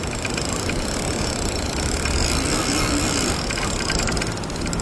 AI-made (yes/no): no